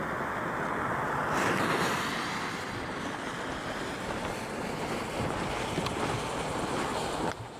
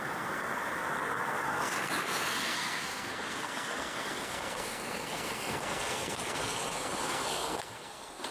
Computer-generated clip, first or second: second